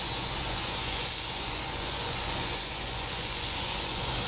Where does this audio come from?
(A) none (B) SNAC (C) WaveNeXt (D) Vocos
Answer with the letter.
D